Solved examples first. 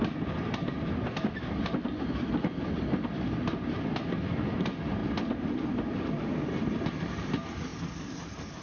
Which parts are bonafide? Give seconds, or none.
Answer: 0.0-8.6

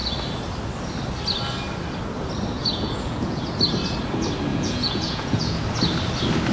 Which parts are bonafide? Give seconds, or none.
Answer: 0.0-2.6; 3.4-4.5; 5.6-6.5

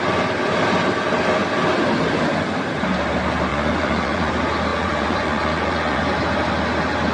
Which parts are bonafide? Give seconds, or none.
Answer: 0.0-3.5; 4.3-4.7; 6.0-7.1

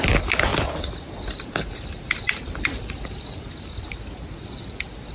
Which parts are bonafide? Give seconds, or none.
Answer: 0.0-5.1

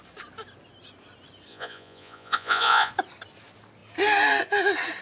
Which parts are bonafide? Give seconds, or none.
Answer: 0.0-1.5; 2.9-5.0